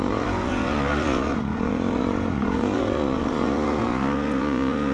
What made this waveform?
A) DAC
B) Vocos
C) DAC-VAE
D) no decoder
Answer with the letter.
B